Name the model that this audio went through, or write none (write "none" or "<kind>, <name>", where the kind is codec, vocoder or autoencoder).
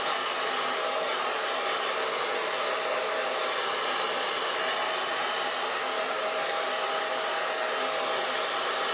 none